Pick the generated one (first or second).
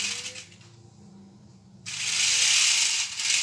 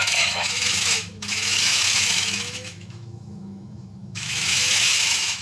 second